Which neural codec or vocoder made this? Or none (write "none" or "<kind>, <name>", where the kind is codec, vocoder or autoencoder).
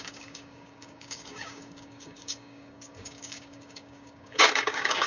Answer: codec, DAC